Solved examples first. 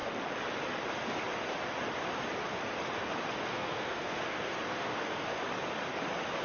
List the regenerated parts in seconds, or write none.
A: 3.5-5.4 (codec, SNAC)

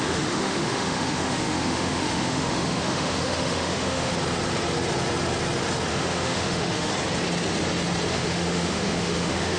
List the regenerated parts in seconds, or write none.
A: 0.0-4.1 (autoencoder, DAC-VAE); 5.9-6.9; 8.1-9.6

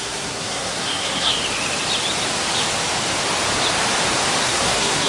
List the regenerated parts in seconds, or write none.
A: 0.0-1.3 (codec, SNAC); 4.4-5.1

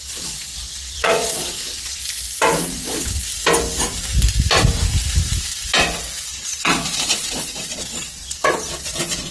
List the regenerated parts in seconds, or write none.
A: 0.0-2.0 (vocoder, Vocos); 2.6-3.2; 6.3-9.3

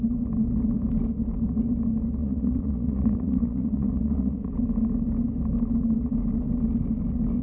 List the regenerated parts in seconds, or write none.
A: 2.2-4.5 (vocoder, Vocos)

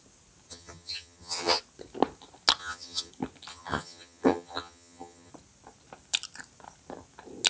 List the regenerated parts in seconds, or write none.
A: 0.5-1.6 (vocoder, HiFi-GAN); 2.6-3.1; 3.5-5.3